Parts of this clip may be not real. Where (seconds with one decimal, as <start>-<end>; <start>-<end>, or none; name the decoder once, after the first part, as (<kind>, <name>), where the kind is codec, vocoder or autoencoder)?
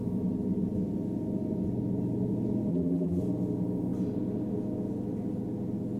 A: 2.7-3.2 (vocoder, BigVGAN v2)